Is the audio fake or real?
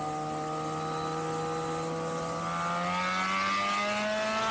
real